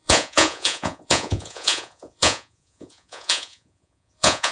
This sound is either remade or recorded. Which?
remade